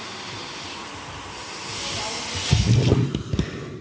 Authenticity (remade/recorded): recorded